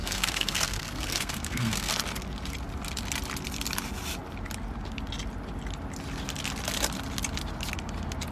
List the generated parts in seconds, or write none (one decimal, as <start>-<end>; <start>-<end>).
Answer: 0.0-1.9